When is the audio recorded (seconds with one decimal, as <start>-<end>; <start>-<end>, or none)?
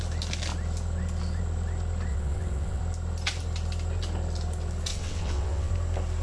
0.0-2.1; 2.8-4.9; 5.7-6.2